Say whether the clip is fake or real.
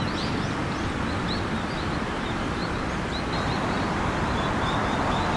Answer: fake